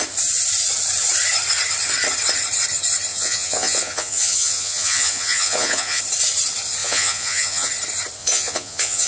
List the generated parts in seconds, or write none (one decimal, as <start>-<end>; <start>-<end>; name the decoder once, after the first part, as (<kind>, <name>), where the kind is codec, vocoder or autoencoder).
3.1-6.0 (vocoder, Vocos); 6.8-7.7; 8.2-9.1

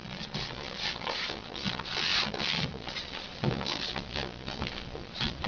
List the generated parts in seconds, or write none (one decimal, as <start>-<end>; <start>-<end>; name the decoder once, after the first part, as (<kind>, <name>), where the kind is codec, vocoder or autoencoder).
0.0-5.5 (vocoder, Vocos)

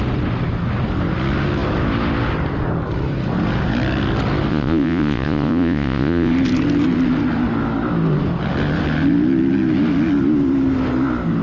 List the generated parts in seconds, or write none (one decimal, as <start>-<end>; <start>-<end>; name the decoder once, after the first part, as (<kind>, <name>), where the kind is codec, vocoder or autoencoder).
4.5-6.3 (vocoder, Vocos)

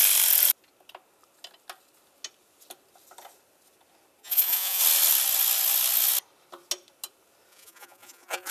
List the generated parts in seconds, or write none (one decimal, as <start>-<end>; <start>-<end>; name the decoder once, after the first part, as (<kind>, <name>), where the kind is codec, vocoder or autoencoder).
4.2-4.8 (vocoder, Vocos); 7.5-8.5

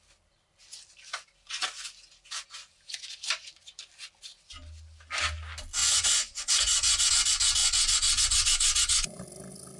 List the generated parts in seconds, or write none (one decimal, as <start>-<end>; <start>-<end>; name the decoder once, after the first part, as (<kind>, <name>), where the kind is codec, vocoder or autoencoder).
5.8-7.1 (vocoder, Vocos); 7.6-9.2

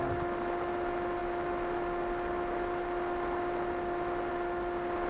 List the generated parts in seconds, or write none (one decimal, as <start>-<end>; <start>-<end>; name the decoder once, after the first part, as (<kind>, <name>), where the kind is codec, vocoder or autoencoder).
none

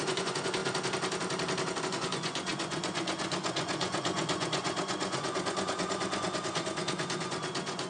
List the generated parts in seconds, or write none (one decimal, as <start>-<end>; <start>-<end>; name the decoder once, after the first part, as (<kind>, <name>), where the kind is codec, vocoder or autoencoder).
0.0-0.6 (vocoder, Vocos); 1.8-7.9